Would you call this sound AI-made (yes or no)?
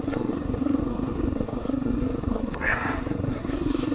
yes